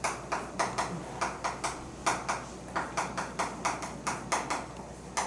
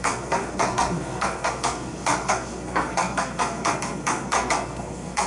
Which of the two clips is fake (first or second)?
second